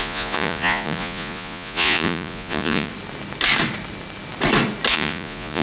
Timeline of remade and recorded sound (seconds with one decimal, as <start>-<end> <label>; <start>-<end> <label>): 0.0-2.9 remade; 2.9-4.9 recorded; 4.9-5.6 remade